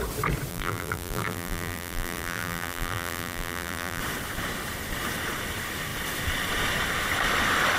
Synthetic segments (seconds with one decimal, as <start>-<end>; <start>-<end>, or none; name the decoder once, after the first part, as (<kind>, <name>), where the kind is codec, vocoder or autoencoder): 0.5-4.0 (vocoder, BigVGAN v2)